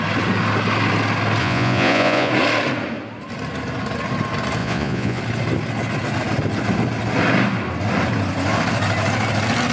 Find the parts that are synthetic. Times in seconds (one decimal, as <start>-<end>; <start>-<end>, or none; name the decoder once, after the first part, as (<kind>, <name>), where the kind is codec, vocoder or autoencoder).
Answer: 1.4-2.3 (vocoder, Vocos); 4.6-5.2